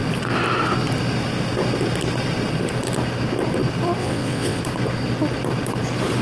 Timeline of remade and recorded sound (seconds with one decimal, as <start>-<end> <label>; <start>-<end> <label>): 0.0-4.0 recorded; 4.0-4.6 remade; 4.6-6.2 recorded